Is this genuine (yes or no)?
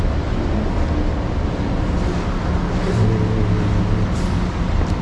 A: yes